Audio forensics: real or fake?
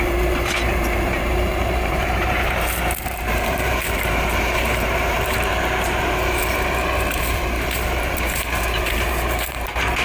fake